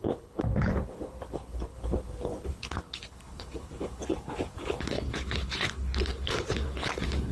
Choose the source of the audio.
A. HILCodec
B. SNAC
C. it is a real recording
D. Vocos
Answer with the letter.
A